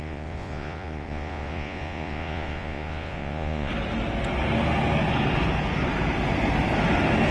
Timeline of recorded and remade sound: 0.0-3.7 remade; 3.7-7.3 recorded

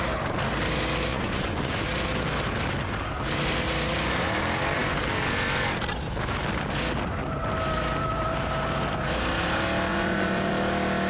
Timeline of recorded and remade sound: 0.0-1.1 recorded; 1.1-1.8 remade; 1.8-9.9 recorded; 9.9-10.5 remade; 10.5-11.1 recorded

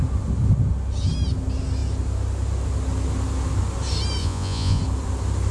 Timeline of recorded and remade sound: 0.0-4.2 recorded; 4.2-4.8 remade; 4.8-5.5 recorded

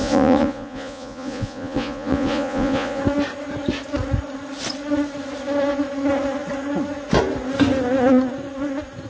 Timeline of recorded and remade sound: 0.0-3.0 remade; 3.0-9.1 recorded